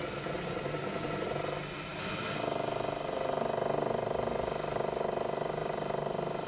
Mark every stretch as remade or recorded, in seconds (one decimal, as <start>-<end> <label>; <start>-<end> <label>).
0.0-6.5 recorded